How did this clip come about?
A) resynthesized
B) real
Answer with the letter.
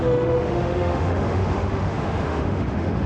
A